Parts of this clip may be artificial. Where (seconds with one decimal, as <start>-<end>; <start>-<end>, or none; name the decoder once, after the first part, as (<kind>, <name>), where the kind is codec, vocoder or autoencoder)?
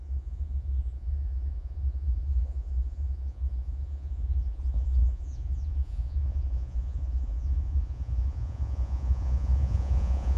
0.0-10.4 (vocoder, Vocos)